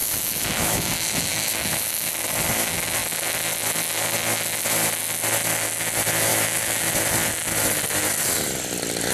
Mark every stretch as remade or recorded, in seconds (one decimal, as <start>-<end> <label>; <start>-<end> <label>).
0.0-2.1 remade; 2.1-6.3 recorded; 6.3-6.9 remade; 6.9-9.1 recorded